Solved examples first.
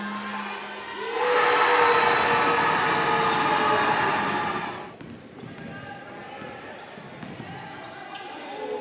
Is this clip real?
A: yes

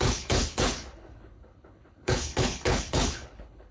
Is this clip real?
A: no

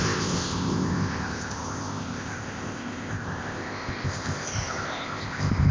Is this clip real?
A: no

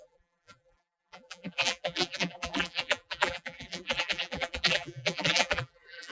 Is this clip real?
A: no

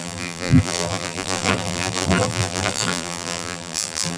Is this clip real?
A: no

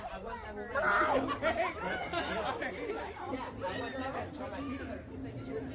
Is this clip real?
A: yes